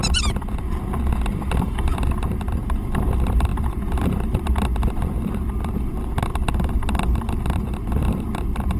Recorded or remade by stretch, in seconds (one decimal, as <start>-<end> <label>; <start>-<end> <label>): 0.0-8.8 recorded